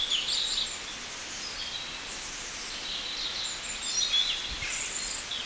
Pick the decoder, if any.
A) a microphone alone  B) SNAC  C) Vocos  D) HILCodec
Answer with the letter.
A